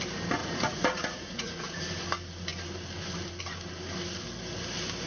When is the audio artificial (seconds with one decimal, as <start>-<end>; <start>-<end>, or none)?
0.4-1.8